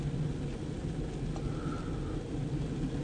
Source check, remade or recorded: recorded